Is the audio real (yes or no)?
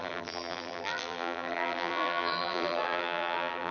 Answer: no